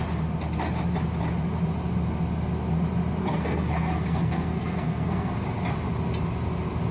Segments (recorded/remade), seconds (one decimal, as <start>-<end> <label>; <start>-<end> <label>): 0.0-3.2 recorded; 3.2-5.3 remade; 5.3-6.9 recorded